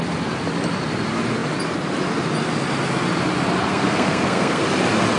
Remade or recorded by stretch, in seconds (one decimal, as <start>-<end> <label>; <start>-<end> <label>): 0.0-3.7 recorded; 3.7-4.6 remade; 4.6-5.2 recorded